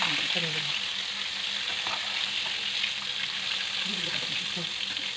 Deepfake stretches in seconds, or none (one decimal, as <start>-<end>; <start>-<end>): none